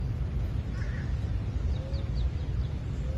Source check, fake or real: real